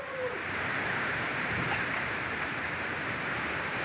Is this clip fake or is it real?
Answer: fake